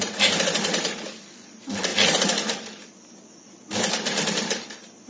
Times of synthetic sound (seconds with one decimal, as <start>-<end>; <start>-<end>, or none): none